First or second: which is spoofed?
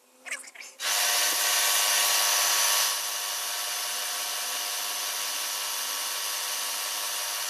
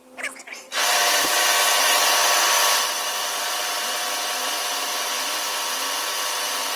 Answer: second